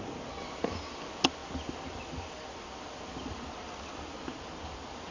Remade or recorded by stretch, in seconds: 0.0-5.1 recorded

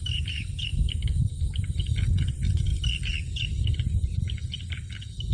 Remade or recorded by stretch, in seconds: 0.0-0.7 remade; 0.7-1.2 recorded; 1.2-2.7 remade; 2.7-3.7 recorded; 3.7-5.3 remade

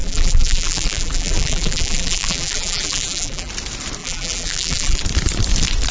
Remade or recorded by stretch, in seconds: 0.0-3.5 remade; 3.5-4.0 recorded; 4.0-5.0 remade; 5.0-5.9 recorded

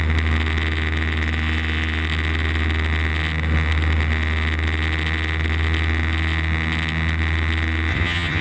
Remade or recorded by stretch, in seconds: 0.0-7.9 recorded; 7.9-8.4 remade

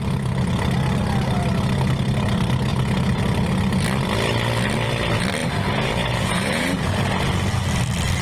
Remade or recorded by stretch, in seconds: 0.0-2.7 recorded; 2.7-3.2 remade; 3.2-5.4 recorded; 5.4-6.9 remade; 6.9-8.2 recorded

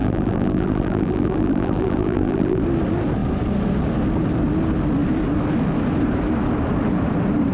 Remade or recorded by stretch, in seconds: 0.0-2.6 remade; 2.6-7.5 recorded